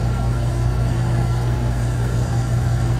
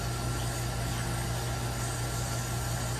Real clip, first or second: second